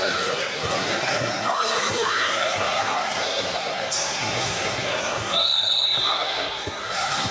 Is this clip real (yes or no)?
no